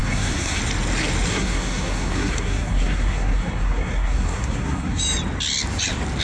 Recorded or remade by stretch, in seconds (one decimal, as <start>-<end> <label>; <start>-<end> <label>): 0.0-0.6 remade; 0.6-1.3 recorded; 1.3-5.0 remade; 5.0-6.2 recorded